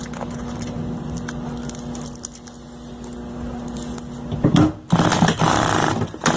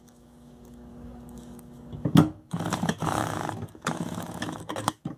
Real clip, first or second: first